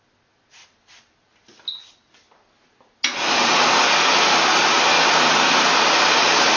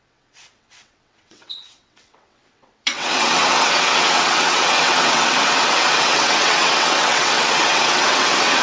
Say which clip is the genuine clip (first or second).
first